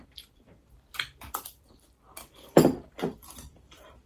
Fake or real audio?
fake